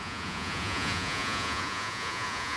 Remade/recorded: remade